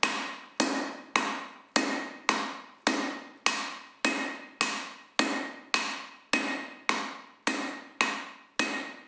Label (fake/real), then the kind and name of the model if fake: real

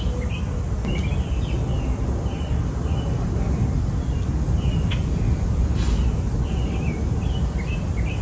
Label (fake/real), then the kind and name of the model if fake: real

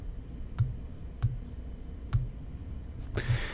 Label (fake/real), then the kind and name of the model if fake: real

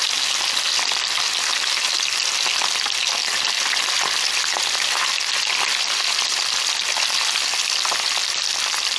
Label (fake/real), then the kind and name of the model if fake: real